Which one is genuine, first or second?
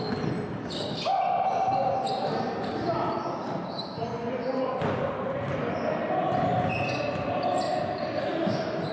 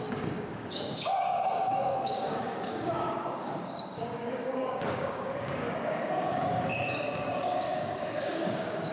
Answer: first